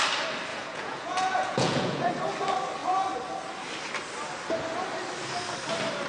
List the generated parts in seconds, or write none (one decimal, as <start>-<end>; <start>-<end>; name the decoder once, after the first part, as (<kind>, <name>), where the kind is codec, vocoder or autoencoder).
0.5-2.1 (vocoder, Vocos)